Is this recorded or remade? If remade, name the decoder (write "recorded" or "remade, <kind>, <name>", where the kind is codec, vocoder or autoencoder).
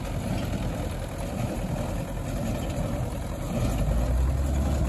recorded